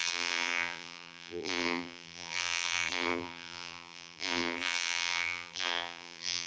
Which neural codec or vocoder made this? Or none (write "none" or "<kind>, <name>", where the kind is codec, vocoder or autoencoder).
vocoder, BigVGAN v2